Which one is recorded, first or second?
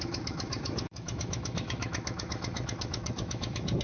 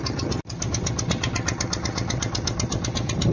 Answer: second